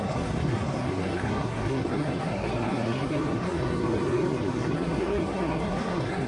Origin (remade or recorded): remade